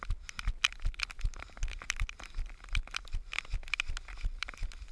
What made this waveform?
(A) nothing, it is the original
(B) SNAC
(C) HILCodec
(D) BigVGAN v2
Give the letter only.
A